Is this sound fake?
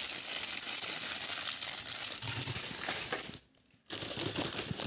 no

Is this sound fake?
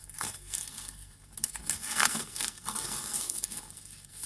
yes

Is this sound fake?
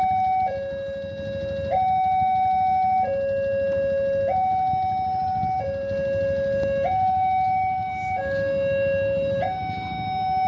no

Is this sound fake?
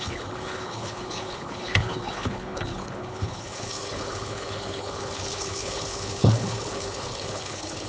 yes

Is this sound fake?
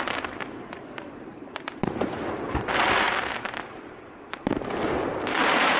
yes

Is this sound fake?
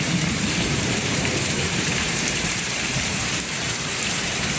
yes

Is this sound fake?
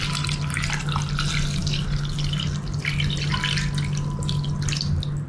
no